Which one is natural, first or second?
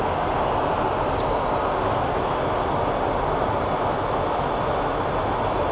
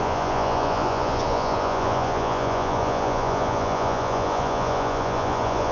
first